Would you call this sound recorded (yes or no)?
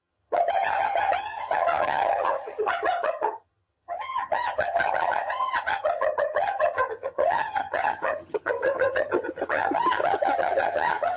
no